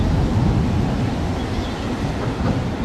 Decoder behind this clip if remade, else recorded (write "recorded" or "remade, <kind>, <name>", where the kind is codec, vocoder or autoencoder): recorded